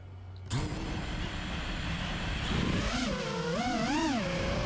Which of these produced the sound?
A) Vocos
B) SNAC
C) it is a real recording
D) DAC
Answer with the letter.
C